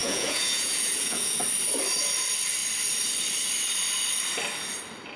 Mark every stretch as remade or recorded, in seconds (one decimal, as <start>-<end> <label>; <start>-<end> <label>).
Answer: 0.0-1.4 remade; 1.4-5.2 recorded